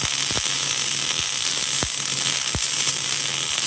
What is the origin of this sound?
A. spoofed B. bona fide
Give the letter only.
B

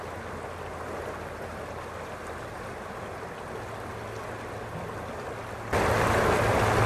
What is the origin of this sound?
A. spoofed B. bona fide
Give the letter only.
B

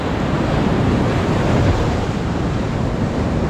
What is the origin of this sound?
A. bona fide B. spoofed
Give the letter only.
B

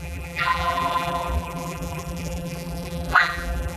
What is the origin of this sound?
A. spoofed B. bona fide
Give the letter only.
A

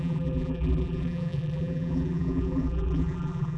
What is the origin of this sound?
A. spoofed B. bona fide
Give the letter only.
A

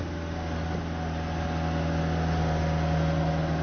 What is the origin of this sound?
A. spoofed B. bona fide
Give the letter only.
B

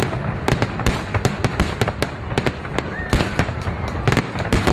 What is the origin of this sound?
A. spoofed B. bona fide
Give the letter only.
B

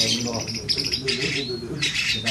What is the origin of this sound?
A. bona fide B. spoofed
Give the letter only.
B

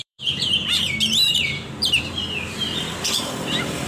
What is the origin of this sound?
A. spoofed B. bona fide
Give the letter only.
A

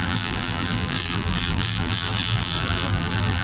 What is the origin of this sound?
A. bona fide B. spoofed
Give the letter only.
B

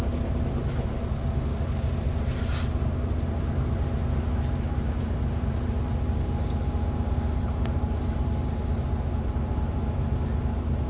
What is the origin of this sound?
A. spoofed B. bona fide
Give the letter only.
B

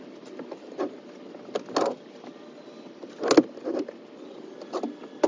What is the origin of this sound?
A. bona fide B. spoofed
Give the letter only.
A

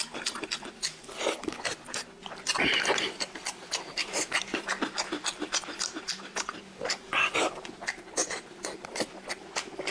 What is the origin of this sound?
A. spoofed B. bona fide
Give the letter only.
A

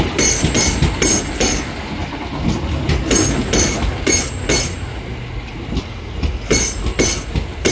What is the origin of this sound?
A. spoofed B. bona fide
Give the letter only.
B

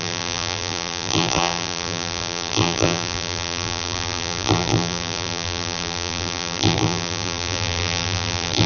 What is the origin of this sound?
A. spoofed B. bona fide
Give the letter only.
A